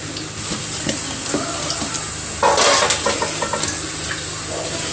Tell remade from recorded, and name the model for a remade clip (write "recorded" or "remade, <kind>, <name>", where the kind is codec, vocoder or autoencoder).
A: recorded